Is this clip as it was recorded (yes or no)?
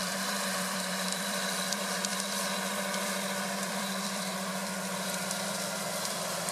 no